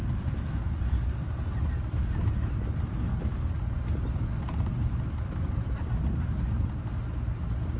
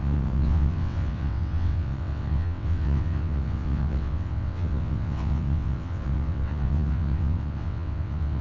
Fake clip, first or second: second